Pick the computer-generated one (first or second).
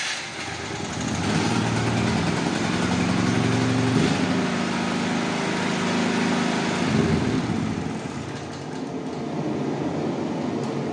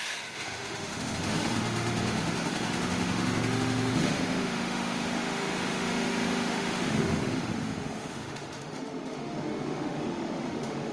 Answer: second